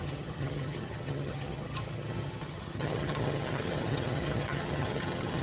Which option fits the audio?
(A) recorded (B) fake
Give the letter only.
B